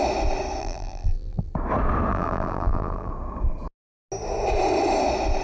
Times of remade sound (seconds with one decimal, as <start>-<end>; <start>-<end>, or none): 0.6-1.5; 2.1-3.1